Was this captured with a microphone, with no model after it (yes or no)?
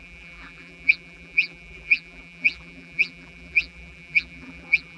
no